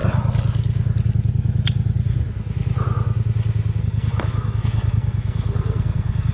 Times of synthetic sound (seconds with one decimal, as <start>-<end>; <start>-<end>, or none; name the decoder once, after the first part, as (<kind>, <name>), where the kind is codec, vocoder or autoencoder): 3.8-6.3 (codec, SNAC)